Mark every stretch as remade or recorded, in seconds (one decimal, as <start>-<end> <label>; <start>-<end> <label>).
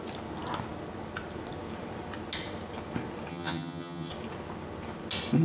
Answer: 0.0-3.3 recorded; 3.3-4.1 remade; 4.1-5.4 recorded